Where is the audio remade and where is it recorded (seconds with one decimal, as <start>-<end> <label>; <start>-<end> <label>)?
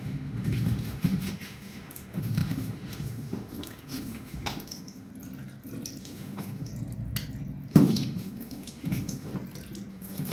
0.0-5.1 remade; 5.1-6.0 recorded; 6.0-6.7 remade; 6.7-7.7 recorded; 7.7-9.3 remade; 9.3-9.9 recorded; 9.9-10.3 remade